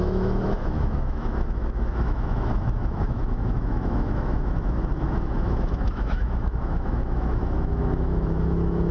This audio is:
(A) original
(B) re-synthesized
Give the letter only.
B